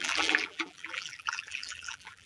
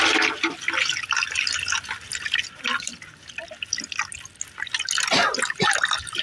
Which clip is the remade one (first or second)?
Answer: first